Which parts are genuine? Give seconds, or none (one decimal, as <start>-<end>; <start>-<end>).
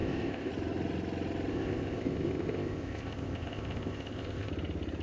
0.5-1.5; 4.5-5.0